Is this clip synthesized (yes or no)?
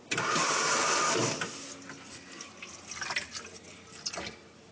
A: no